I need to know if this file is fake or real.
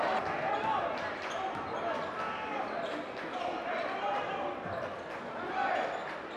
real